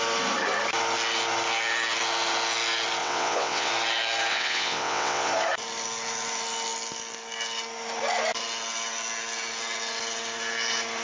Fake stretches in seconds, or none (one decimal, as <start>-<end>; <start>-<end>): 3.0-3.7; 4.3-5.3